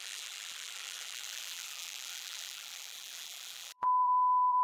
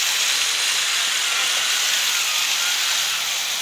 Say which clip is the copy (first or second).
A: first